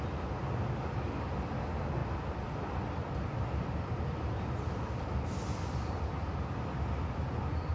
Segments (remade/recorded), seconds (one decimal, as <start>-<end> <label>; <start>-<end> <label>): 0.0-2.0 recorded; 2.0-5.9 remade; 5.9-7.7 recorded

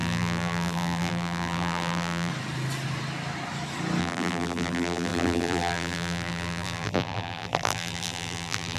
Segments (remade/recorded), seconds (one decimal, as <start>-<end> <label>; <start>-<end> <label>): 0.0-2.3 remade; 2.3-4.0 recorded; 4.0-8.8 remade

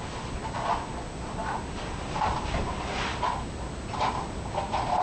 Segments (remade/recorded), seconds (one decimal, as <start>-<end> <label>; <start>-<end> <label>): 0.0-5.0 recorded

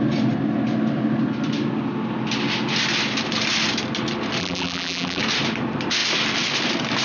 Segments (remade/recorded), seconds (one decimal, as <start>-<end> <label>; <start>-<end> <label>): 0.0-4.4 recorded; 4.4-5.2 remade; 5.2-7.0 recorded

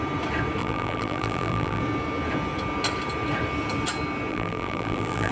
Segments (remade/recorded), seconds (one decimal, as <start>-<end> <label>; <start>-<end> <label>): 0.0-0.6 recorded; 0.6-1.8 remade; 1.8-4.3 recorded; 4.3-5.3 remade

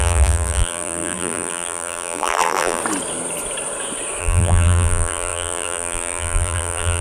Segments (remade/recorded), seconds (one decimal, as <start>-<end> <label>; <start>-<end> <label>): 0.0-2.8 remade; 2.8-4.2 recorded; 4.2-7.0 remade